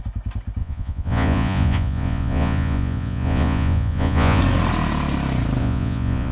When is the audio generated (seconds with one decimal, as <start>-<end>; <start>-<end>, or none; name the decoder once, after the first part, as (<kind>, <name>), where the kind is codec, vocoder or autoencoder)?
0.6-4.4 (vocoder, Vocos); 5.6-6.3